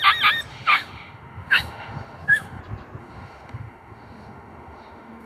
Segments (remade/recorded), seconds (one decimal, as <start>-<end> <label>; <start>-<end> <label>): 0.0-0.5 recorded; 0.5-2.6 remade; 2.6-3.0 recorded; 3.0-5.3 remade